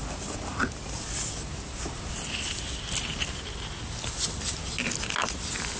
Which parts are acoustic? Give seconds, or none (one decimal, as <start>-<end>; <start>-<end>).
0.0-5.8